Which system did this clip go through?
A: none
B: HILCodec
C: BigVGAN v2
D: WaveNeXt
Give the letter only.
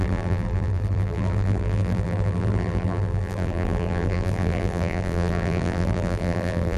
C